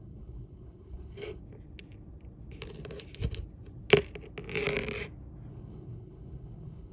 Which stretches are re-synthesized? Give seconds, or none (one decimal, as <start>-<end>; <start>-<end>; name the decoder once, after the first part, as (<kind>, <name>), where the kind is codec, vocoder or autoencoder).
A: 0.0-1.4 (codec, HILCodec); 5.5-6.9